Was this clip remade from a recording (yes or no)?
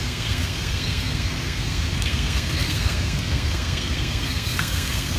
yes